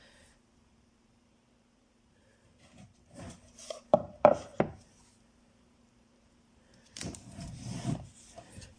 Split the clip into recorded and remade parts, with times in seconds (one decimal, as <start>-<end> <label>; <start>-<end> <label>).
0.0-8.8 remade